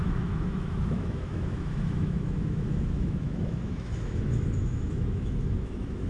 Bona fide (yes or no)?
no